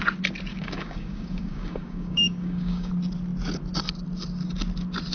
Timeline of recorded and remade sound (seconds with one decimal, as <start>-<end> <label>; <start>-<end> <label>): 0.0-0.5 recorded; 0.5-2.9 remade; 2.9-5.1 recorded